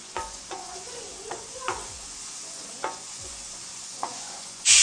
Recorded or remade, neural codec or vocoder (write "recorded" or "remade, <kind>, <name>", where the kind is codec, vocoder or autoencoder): remade, vocoder, Vocos